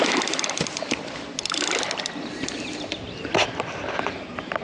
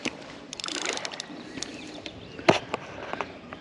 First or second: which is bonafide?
first